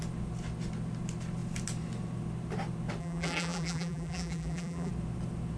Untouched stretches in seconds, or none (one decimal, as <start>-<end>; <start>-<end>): 0.0-3.0; 4.9-5.6